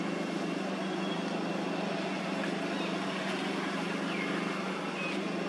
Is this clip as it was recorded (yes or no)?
yes